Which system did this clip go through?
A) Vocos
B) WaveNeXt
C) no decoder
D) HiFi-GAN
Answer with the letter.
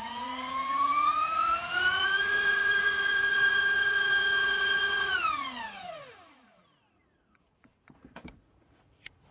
A